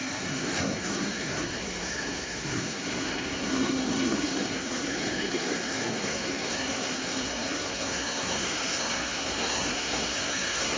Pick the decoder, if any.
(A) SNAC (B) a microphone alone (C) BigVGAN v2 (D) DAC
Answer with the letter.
A